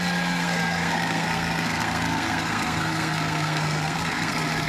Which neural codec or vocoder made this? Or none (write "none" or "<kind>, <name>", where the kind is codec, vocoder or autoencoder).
codec, SNAC